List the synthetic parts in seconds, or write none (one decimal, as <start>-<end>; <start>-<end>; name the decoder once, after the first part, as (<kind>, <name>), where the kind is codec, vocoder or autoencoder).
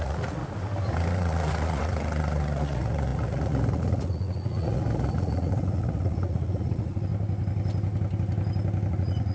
0.0-0.4 (vocoder, Vocos); 1.1-7.1; 8.9-9.3